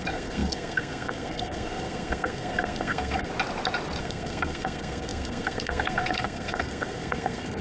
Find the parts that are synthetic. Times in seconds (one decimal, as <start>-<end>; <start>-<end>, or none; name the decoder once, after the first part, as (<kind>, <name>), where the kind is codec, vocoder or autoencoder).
0.0-3.3 (codec, SNAC); 4.0-7.6